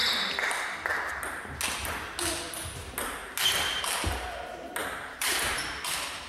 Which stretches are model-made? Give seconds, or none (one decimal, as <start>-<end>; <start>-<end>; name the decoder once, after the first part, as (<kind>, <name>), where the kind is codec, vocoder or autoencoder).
4.8-6.3 (vocoder, BigVGAN v2)